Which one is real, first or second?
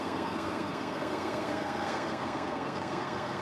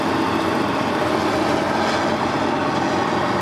second